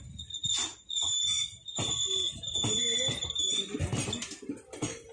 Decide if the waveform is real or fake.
real